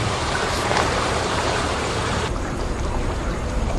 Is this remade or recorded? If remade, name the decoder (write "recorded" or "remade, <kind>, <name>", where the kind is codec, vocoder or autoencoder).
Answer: remade, vocoder, BigVGAN v2